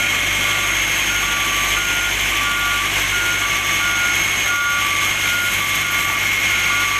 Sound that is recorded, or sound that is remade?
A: recorded